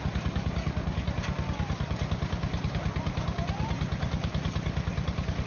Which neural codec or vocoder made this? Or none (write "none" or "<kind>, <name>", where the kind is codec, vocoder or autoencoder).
none